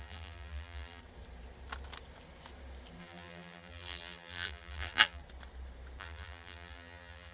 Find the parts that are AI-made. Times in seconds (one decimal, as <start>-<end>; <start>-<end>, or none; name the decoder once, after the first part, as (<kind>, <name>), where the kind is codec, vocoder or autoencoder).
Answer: 0.0-1.0 (vocoder, BigVGAN v2); 3.0-5.2; 6.0-7.3